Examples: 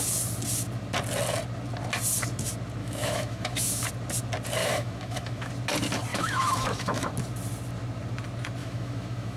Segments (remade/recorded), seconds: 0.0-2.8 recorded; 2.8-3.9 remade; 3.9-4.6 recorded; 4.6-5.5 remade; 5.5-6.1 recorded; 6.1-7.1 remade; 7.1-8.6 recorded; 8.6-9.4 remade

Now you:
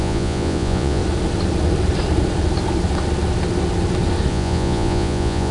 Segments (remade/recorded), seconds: 0.0-1.0 remade; 1.0-4.3 recorded; 4.3-5.5 remade

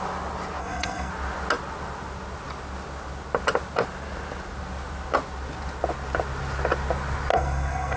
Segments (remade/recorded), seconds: 0.0-0.6 recorded; 0.6-1.1 remade; 1.1-7.3 recorded; 7.3-8.0 remade

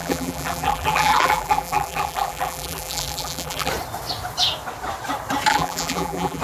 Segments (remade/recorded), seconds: 0.0-3.7 remade; 3.7-5.5 recorded; 5.5-6.4 remade